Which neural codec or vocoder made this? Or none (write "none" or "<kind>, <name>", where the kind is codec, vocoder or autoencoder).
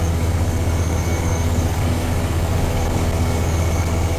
codec, DAC